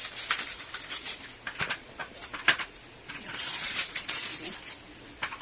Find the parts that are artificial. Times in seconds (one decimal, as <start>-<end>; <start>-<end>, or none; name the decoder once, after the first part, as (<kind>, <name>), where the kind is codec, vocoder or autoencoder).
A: 1.6-2.0 (vocoder, Vocos); 2.5-4.3